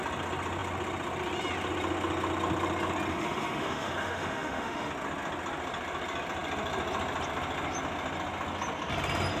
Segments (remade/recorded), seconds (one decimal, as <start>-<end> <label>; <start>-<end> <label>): 0.0-3.1 recorded; 3.1-4.9 remade; 4.9-9.4 recorded